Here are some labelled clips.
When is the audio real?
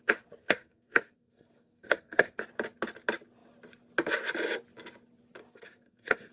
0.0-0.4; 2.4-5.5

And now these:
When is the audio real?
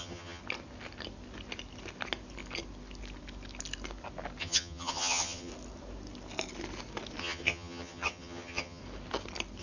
0.4-4.4; 5.5-7.2; 8.8-9.6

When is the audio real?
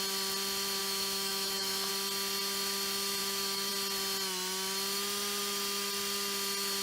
0.0-0.8; 1.9-3.2; 3.7-6.8